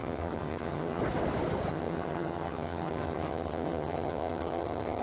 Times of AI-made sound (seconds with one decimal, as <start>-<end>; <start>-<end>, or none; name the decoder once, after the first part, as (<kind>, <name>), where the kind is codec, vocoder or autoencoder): 0.0-1.0 (vocoder, HiFi-GAN); 1.7-5.0